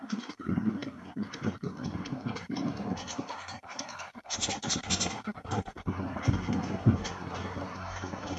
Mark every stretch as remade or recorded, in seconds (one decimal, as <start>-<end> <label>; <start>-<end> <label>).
0.0-8.4 remade